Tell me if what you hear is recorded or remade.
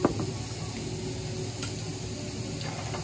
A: recorded